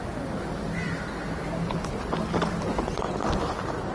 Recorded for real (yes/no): yes